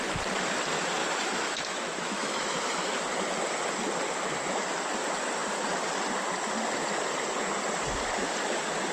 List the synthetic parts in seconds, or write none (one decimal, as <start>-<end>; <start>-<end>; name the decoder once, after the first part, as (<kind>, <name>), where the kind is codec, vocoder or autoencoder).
1.0-3.0 (autoencoder, DAC-VAE)

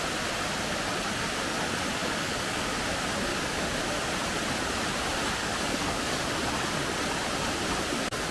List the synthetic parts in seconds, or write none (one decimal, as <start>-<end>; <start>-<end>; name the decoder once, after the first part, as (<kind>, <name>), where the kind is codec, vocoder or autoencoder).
2.0-2.7 (codec, DAC); 3.3-3.8; 5.4-6.2

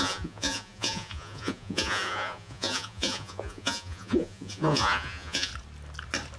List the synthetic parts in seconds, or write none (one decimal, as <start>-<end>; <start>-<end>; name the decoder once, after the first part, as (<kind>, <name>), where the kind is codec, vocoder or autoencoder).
0.0-5.5 (vocoder, Vocos)

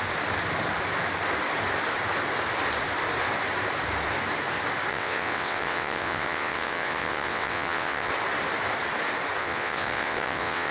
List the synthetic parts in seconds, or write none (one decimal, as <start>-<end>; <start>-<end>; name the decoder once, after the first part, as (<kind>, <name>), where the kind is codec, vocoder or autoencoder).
4.9-8.1 (vocoder, WaveNeXt); 9.4-10.7

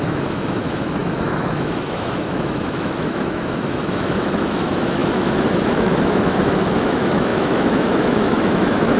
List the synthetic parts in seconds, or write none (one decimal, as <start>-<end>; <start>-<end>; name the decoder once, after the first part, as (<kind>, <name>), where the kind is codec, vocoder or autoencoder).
0.0-9.0 (autoencoder, DAC-VAE)